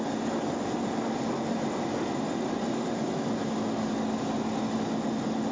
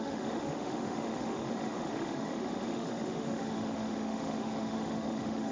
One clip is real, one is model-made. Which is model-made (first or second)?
second